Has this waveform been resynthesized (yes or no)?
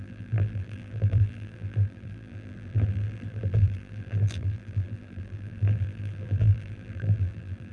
yes